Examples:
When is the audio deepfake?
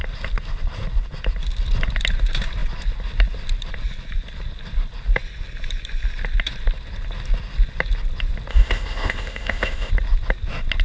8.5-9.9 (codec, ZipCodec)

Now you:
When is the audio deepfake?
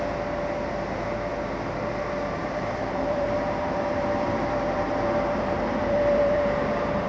2.4-7.1 (vocoder, BigVGAN v2)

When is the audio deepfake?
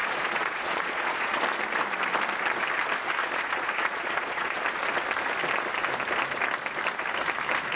0.0-1.4 (vocoder, Vocos); 3.2-4.6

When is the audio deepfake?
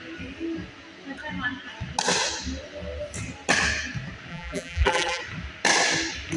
4.3-5.2 (vocoder, BigVGAN v2)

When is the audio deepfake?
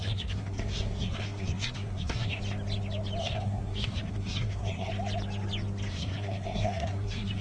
0.0-2.4 (codec, SNAC); 3.2-4.9; 5.9-7.4